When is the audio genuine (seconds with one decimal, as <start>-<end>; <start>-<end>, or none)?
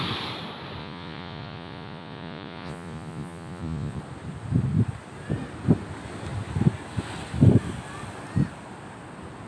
0.0-0.8; 4.0-9.5